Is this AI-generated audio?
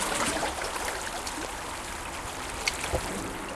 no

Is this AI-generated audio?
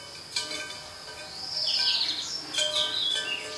no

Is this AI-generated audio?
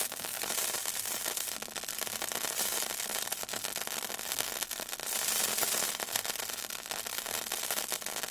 no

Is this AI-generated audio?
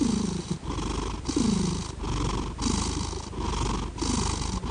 no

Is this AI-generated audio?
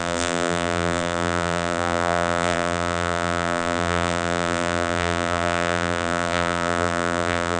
yes